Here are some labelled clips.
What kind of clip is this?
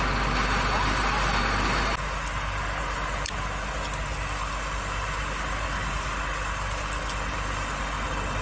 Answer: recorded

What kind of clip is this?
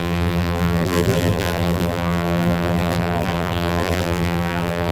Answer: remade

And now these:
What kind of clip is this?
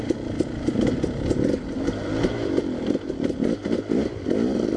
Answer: recorded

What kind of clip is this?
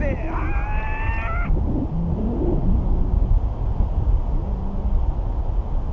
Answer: recorded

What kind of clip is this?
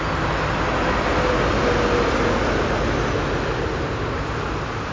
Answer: recorded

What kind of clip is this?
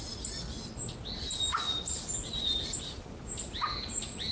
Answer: recorded